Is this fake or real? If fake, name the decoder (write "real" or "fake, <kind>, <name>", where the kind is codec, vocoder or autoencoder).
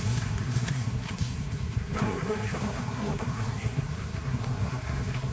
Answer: fake, codec, SNAC